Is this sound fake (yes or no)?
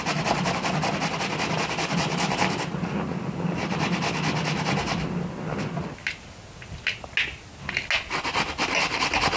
no